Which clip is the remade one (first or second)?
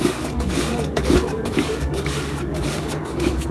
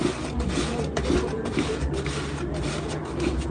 first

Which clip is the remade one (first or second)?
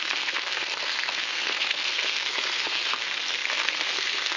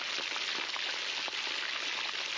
first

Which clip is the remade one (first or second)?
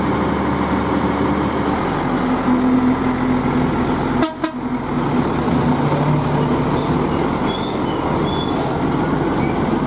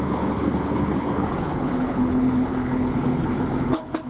second